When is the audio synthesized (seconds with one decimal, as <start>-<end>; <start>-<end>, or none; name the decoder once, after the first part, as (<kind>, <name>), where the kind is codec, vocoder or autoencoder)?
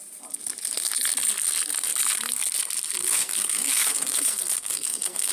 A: 3.0-5.3 (codec, SNAC)